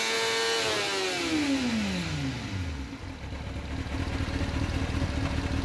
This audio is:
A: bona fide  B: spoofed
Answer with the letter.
A